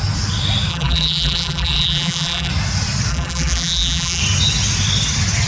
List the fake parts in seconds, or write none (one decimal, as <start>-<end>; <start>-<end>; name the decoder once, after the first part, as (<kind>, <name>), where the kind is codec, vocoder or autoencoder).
0.7-2.5 (vocoder, BigVGAN v2); 3.1-4.2